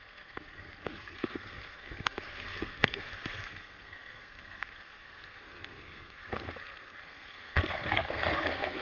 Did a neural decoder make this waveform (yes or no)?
yes